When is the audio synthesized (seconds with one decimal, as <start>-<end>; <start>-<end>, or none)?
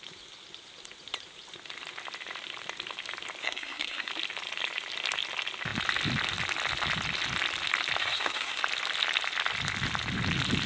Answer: 3.4-4.1; 8.0-8.6